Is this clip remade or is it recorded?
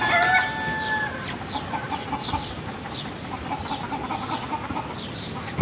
recorded